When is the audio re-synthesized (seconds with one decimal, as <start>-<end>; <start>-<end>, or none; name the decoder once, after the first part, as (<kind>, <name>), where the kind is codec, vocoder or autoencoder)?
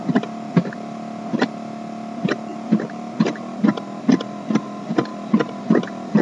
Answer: none